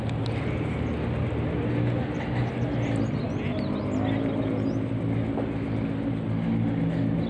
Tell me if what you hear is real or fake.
real